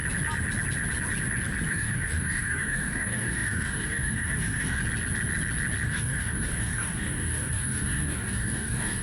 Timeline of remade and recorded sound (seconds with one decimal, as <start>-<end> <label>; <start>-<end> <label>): 0.0-1.7 recorded; 1.7-4.8 remade; 4.8-5.9 recorded; 5.9-9.0 remade